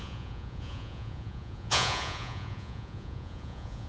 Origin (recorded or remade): remade